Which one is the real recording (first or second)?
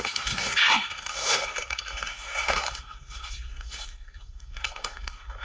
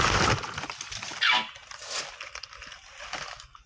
second